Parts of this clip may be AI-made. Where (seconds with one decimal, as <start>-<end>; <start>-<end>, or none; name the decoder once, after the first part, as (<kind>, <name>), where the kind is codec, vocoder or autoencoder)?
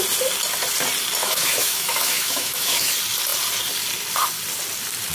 1.2-2.9 (autoencoder, DAC-VAE)